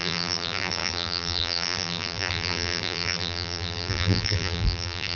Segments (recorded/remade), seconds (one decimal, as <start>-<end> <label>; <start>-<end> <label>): 0.0-5.2 remade